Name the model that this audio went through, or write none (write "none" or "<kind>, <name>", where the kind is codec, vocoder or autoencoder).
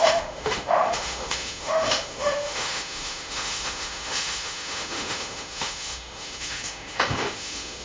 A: autoencoder, DAC-VAE